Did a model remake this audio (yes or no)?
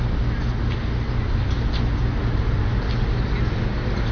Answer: no